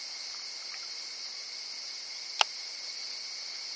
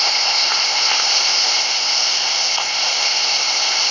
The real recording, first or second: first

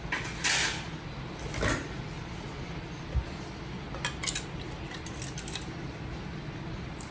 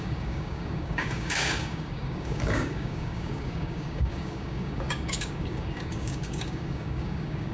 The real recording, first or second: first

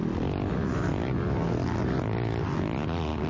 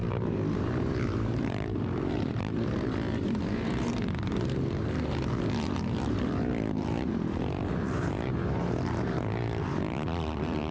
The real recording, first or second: first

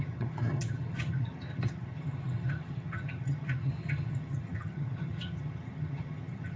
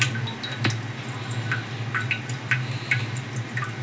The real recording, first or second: second